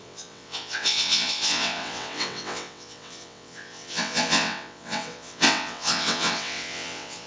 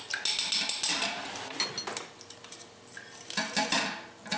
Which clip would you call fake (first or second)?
first